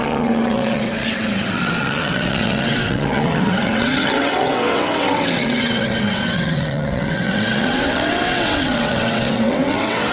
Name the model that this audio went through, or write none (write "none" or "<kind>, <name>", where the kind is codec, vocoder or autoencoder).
vocoder, WaveNeXt